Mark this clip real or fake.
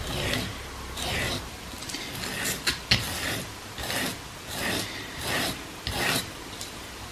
real